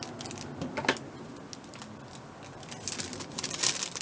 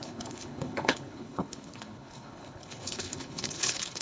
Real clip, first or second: first